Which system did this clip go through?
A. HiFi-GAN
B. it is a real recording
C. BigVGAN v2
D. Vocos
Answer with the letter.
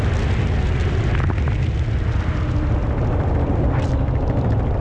B